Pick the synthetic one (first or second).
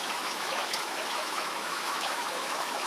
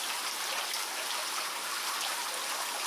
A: first